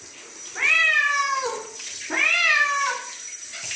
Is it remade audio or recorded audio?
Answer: recorded